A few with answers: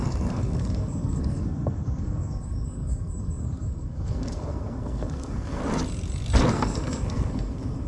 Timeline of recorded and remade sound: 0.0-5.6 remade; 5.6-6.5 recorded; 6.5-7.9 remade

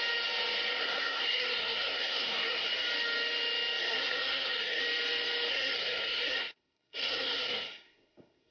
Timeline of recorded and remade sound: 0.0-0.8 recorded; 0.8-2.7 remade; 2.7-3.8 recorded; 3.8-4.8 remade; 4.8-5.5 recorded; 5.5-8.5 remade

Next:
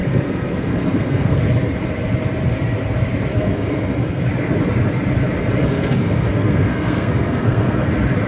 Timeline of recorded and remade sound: 0.0-1.4 remade; 1.4-3.3 recorded; 3.3-4.2 remade; 4.2-5.6 recorded; 5.6-7.9 remade; 7.9-8.3 recorded

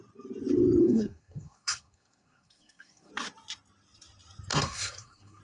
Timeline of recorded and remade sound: 0.0-0.8 recorded; 0.8-3.1 remade; 3.1-4.5 recorded; 4.5-5.4 remade

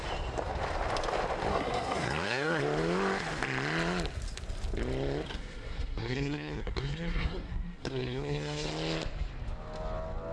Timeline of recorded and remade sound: 0.0-1.5 recorded; 1.5-2.6 remade; 2.6-5.3 recorded; 5.3-8.7 remade; 8.7-10.3 recorded

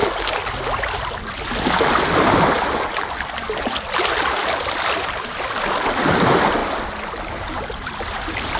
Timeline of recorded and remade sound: 0.0-8.6 recorded

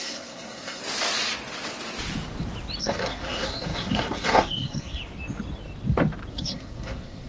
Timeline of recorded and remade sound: 0.0-0.8 remade; 0.8-2.8 recorded; 2.8-5.0 remade; 5.0-6.3 recorded; 6.3-7.3 remade

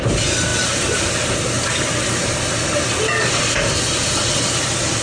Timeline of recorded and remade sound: 0.0-5.0 recorded